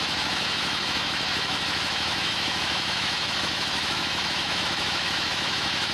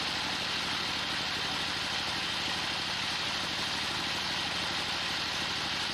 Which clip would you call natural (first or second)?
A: second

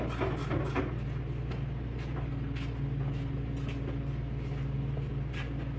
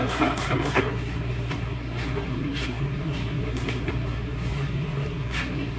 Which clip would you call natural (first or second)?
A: first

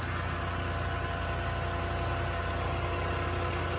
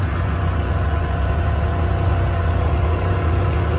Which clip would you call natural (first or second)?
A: first